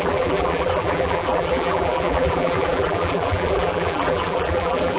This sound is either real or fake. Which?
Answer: fake